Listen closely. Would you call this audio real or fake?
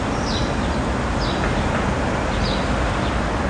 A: real